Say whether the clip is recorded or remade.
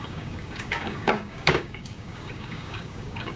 remade